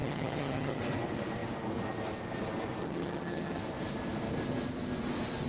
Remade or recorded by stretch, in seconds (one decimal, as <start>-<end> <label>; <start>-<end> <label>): 0.0-0.8 remade; 0.8-2.8 recorded; 2.8-3.6 remade; 3.6-5.5 recorded